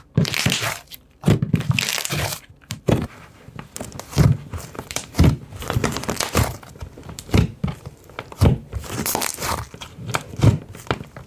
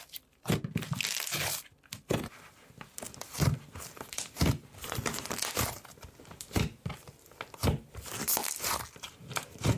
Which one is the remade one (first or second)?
first